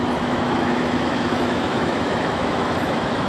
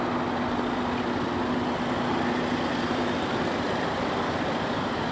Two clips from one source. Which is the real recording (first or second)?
second